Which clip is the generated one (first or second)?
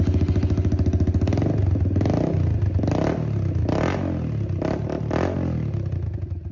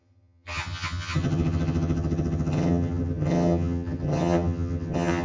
second